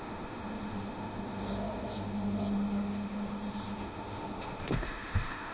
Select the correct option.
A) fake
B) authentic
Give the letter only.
A